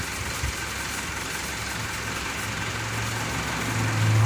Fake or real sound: real